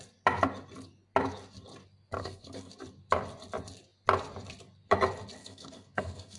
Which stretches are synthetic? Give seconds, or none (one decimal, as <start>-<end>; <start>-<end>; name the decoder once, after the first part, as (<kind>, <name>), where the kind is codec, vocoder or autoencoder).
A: 2.2-2.7 (codec, SNAC); 5.4-6.4